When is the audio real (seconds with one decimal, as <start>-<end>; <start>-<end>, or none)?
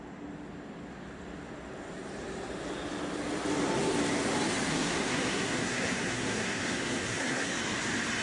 0.0-4.7; 7.6-8.2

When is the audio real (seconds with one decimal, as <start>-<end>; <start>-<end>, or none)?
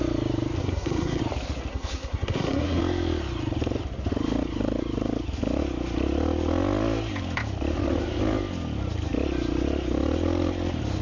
0.0-0.6; 1.2-1.7; 2.8-11.0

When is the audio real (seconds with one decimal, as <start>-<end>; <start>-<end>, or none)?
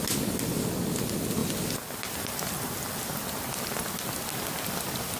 0.0-5.2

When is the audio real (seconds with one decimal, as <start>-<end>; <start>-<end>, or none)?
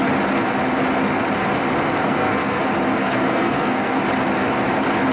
0.0-2.0; 2.6-3.0; 4.0-5.1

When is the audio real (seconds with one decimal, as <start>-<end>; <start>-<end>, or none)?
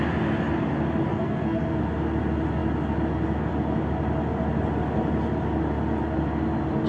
0.0-1.1; 1.8-6.9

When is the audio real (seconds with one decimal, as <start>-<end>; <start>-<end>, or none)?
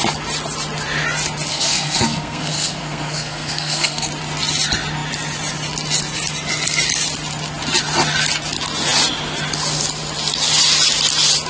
0.0-1.5; 4.1-11.5